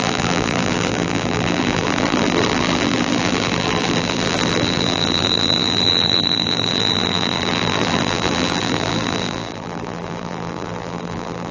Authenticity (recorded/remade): remade